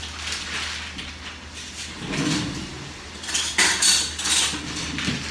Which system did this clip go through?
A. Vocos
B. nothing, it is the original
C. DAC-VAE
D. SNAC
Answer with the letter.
B